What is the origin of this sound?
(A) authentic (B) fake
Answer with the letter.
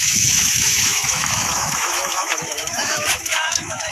B